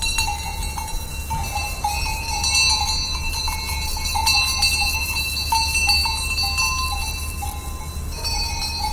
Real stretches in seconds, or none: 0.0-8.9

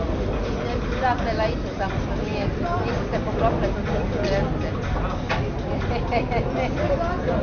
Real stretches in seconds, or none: 0.0-7.4

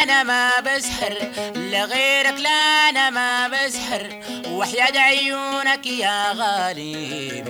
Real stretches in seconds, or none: 0.0-7.5

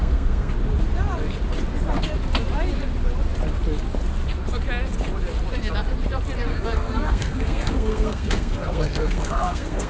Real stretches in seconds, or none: 0.5-6.5